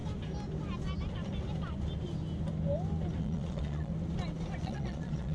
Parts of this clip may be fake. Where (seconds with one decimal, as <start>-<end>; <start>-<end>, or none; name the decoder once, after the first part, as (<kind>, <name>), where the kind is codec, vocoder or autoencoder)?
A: 3.2-3.9 (vocoder, Vocos); 4.6-5.3